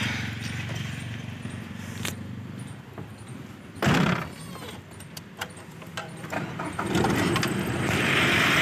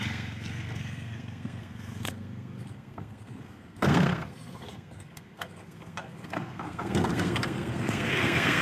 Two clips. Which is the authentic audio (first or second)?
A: first